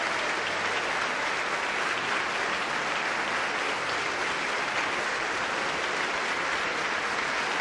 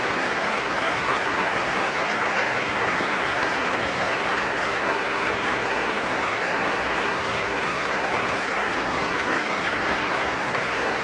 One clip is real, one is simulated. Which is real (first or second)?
first